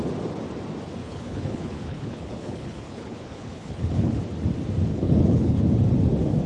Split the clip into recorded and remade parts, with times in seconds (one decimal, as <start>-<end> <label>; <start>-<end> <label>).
0.0-1.0 recorded; 1.0-4.2 remade; 4.2-4.9 recorded; 4.9-5.6 remade; 5.6-6.5 recorded